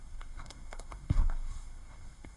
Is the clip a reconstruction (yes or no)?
yes